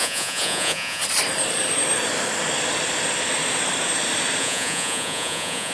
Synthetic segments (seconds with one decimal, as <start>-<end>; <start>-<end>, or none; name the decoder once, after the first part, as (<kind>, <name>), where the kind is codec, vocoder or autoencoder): 0.0-1.0 (vocoder, Vocos); 4.4-5.7